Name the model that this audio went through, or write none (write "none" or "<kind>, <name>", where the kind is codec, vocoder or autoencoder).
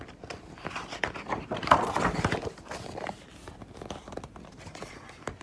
vocoder, BigVGAN v2